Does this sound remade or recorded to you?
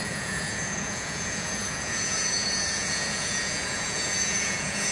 remade